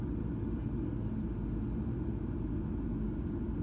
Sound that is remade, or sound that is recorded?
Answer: recorded